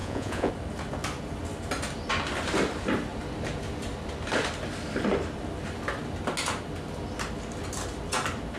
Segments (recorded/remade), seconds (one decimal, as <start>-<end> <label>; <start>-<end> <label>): 0.0-0.5 remade; 0.5-8.6 recorded